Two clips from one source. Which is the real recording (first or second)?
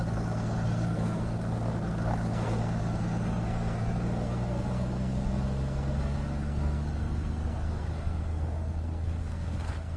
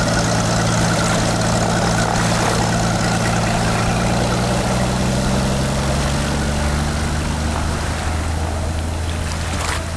second